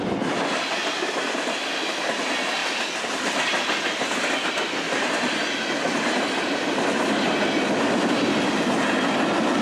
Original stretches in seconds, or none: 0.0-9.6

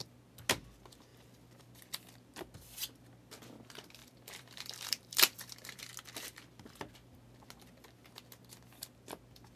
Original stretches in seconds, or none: 0.0-4.0; 5.8-9.6

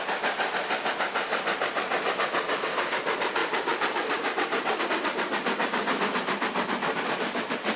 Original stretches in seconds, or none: 0.0-3.4; 4.8-7.8

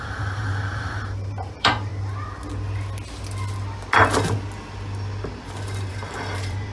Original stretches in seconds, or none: 1.9-5.9

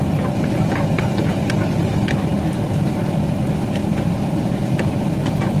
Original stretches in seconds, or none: 0.0-3.8; 5.0-5.6